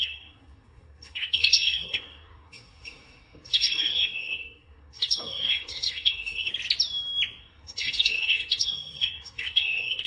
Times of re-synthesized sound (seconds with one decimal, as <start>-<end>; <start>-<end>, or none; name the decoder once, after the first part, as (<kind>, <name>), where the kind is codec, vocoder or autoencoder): 0.0-6.5 (codec, SNAC); 7.4-10.1